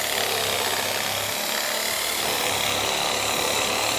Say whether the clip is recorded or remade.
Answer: recorded